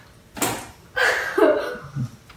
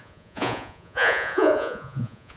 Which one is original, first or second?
first